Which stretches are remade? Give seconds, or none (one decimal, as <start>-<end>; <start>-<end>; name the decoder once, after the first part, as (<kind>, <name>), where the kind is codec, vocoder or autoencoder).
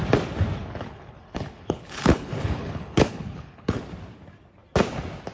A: 0.6-3.8 (codec, HILCodec)